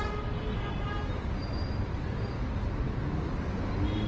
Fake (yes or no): no